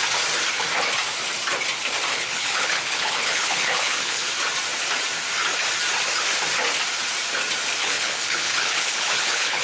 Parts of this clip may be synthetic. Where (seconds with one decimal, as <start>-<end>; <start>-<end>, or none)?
2.1-4.3; 7.8-9.6